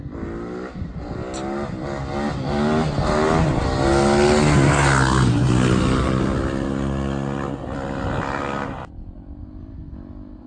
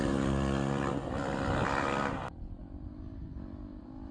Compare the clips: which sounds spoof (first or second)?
second